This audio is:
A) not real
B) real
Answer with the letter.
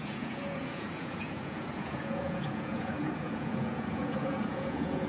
A